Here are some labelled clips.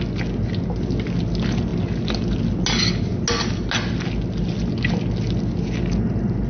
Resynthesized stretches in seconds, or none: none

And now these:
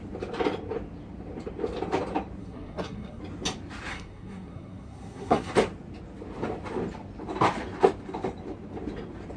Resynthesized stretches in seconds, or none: 2.4-3.2 (codec, SNAC); 3.9-5.5

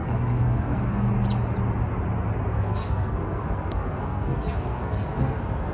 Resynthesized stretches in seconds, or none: 0.0-1.1 (codec, SNAC); 2.5-5.7

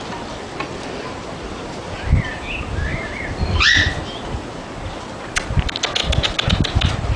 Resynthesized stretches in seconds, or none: none

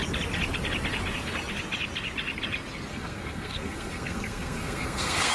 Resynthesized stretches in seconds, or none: 2.9-5.3 (codec, SNAC)

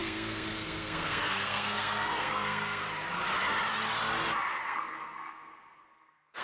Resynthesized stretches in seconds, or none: 0.0-2.8 (codec, SNAC); 4.6-6.4

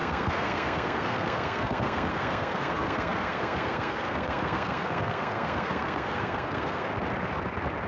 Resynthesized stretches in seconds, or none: 0.0-6.9 (codec, SNAC)